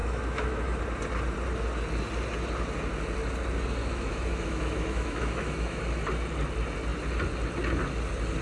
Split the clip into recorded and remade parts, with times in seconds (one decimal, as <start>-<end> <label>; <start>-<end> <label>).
0.0-0.8 remade; 0.8-3.8 recorded; 3.8-5.8 remade; 5.8-8.4 recorded